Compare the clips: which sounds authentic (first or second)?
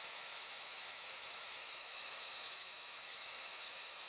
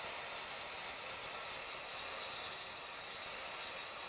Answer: second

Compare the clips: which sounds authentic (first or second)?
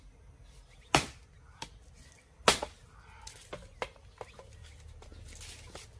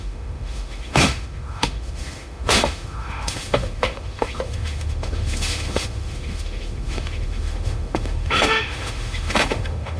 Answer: first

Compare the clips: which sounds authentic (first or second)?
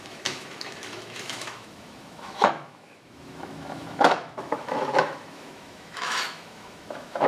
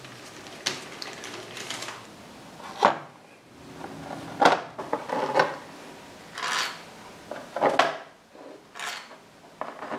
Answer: second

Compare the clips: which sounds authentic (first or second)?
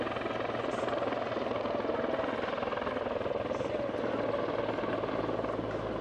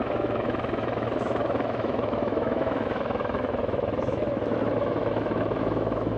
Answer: first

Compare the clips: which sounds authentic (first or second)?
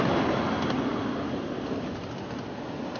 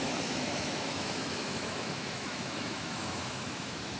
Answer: first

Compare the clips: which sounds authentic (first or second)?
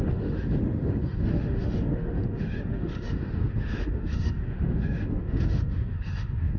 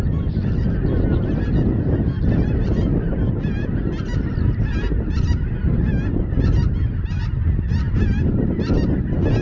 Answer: second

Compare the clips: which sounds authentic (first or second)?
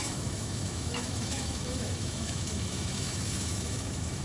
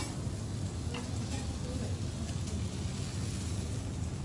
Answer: second